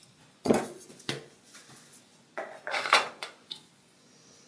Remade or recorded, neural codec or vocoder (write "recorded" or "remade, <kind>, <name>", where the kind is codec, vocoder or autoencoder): remade, vocoder, Vocos